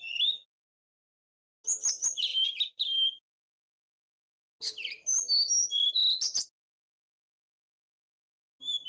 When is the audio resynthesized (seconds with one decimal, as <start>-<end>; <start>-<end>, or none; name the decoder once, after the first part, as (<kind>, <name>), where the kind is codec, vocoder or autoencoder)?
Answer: none